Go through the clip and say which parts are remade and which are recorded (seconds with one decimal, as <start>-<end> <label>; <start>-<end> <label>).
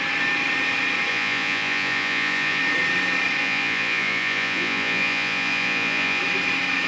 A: 0.0-1.1 recorded; 1.1-2.6 remade; 2.6-3.4 recorded; 3.4-6.2 remade; 6.2-6.9 recorded